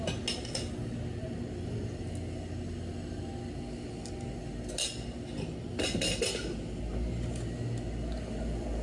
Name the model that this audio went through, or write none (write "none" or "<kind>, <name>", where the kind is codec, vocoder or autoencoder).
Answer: none